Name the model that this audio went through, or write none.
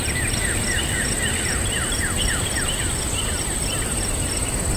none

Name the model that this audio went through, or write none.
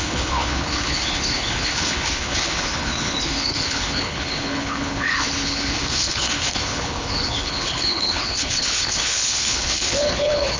codec, HILCodec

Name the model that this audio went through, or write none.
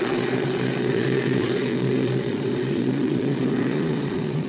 vocoder, Vocos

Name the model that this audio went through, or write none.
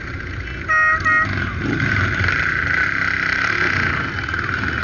none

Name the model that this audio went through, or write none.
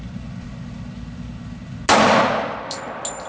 none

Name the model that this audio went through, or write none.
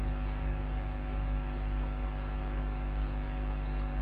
codec, DAC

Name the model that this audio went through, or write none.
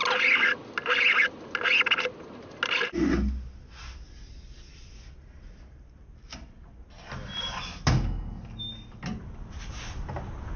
none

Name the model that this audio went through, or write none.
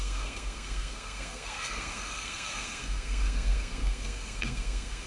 codec, SNAC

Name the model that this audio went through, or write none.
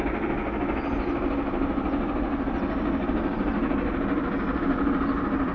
none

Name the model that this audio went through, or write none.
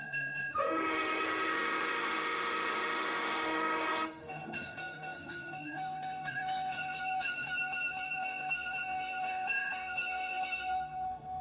autoencoder, DAC-VAE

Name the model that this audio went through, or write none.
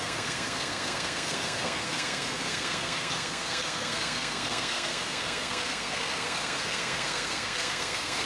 codec, SNAC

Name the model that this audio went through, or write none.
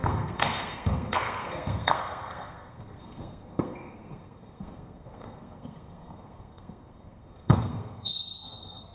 codec, SNAC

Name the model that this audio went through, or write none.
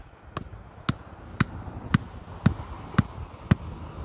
none